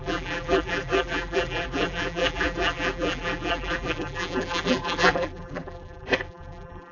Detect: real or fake fake